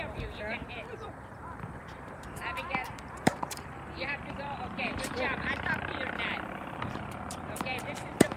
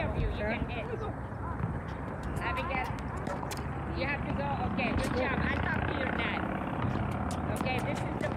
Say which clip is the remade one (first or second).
first